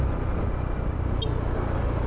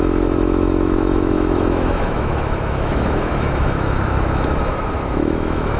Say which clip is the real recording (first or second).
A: first